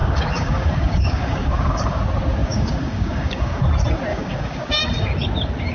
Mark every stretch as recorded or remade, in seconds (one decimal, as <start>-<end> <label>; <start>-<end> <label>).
0.0-2.0 remade; 2.0-2.4 recorded; 2.4-3.6 remade; 3.6-4.1 recorded; 4.1-4.8 remade; 4.8-5.7 recorded